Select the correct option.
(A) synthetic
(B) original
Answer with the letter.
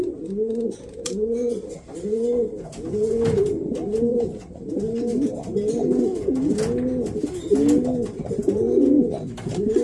B